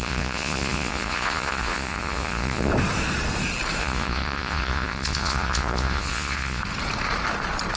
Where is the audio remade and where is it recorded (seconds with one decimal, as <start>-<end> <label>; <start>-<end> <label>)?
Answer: 0.0-2.7 remade; 2.7-3.8 recorded; 3.8-6.6 remade; 6.6-7.8 recorded